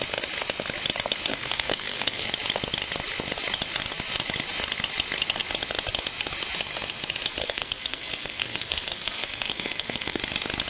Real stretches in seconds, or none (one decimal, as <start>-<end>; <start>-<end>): 0.0-1.3; 2.3-7.4; 10.2-10.7